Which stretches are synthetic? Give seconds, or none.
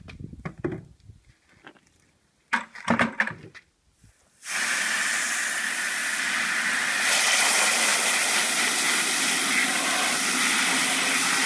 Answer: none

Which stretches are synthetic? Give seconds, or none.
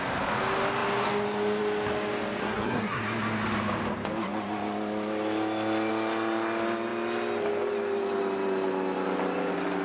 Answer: 2.4-3.0 (codec, SNAC)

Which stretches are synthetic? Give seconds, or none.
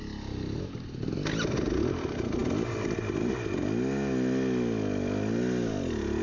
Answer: none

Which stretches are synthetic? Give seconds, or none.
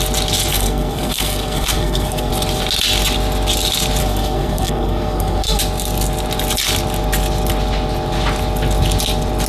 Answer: 0.5-2.3 (codec, SNAC); 4.0-5.6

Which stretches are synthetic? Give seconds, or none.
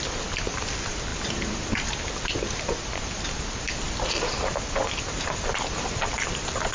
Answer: none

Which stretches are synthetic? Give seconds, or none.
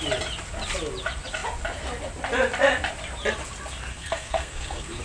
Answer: 3.9-5.0 (codec, SNAC)